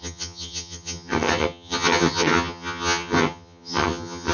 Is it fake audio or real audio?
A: fake